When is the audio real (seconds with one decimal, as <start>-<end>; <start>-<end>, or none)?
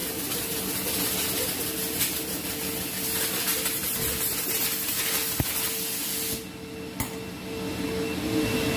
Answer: 0.0-8.8